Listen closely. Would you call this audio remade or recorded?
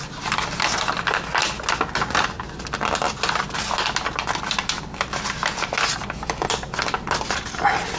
recorded